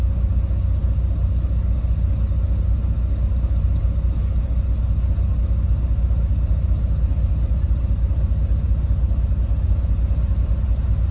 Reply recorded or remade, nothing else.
recorded